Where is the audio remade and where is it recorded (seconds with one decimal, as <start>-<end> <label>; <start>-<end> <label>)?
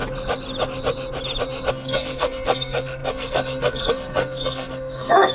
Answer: 0.0-1.7 recorded; 1.7-5.3 remade